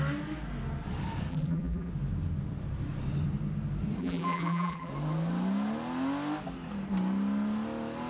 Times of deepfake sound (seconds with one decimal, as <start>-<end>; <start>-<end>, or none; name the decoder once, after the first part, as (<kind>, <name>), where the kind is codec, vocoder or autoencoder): 1.3-1.9 (vocoder, BigVGAN v2); 4.0-4.9